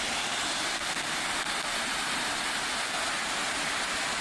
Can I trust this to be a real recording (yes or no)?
yes